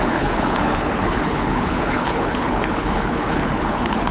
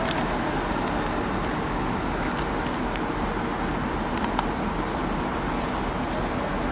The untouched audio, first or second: second